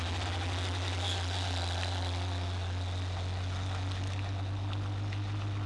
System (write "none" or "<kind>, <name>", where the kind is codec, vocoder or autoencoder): none